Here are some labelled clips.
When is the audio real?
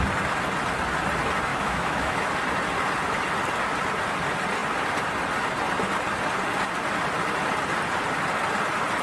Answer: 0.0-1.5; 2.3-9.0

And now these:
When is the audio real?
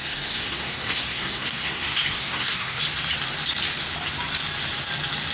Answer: 2.8-5.3